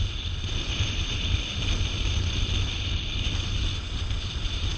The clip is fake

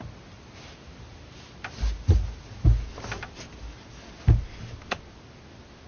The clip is real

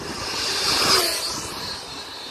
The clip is real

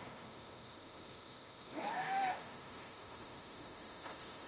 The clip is fake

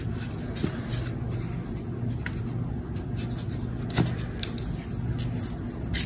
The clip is real